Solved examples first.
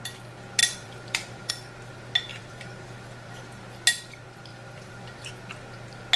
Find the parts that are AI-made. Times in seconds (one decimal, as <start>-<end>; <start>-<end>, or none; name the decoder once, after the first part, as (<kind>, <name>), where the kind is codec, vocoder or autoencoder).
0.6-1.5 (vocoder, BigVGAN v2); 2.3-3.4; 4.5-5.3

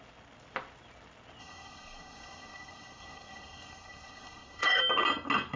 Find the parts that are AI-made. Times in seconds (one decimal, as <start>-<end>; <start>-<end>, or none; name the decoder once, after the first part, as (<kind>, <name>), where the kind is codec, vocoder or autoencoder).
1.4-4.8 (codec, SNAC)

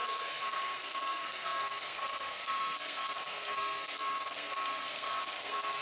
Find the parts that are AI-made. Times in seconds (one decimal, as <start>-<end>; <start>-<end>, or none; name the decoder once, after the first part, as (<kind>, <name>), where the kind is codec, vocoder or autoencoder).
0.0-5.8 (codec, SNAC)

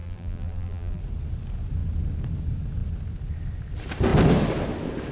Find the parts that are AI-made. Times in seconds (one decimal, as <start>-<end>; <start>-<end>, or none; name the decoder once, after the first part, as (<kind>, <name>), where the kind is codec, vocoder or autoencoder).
0.0-1.0 (vocoder, BigVGAN v2)

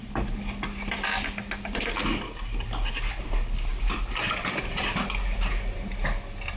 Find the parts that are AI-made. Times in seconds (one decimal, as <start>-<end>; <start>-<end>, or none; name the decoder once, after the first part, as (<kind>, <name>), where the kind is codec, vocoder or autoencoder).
none

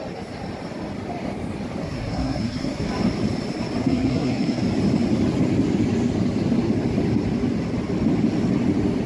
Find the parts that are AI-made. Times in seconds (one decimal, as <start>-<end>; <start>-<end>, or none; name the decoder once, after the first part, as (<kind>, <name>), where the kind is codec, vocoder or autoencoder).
1.8-2.9 (codec, SNAC); 3.8-4.6